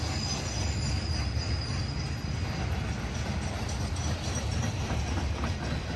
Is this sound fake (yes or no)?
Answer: no